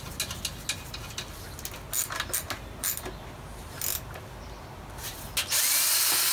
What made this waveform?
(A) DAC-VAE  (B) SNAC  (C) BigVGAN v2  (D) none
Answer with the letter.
D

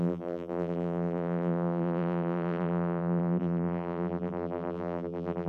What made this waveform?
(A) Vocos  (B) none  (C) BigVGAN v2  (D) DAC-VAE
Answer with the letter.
C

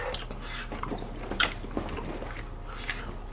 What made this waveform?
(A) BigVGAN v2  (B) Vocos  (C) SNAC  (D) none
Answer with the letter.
D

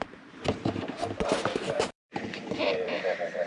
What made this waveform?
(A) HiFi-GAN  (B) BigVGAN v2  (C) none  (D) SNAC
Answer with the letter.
B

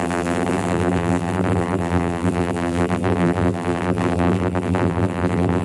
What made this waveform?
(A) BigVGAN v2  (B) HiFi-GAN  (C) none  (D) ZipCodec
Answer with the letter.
A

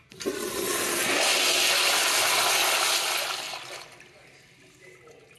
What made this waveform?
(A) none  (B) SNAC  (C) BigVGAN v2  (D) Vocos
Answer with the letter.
A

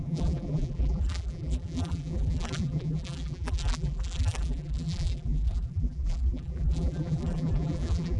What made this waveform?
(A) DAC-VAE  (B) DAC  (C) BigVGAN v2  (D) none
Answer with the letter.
C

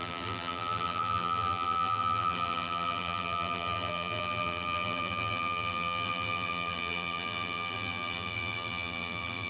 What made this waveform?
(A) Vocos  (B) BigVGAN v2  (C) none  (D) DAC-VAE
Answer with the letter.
B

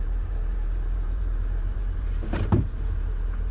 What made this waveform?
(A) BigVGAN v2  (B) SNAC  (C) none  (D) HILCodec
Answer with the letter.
A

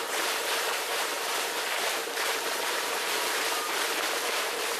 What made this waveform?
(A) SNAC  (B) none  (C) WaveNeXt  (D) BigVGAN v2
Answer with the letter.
D